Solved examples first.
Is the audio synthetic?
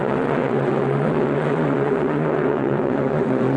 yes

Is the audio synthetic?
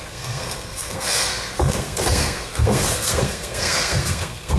yes